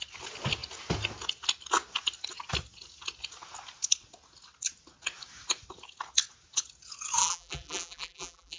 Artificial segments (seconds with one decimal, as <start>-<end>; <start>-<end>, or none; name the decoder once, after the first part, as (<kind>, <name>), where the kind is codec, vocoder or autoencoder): 7.2-8.6 (vocoder, BigVGAN v2)